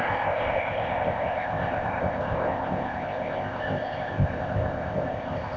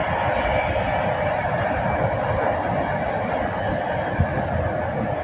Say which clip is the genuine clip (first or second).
second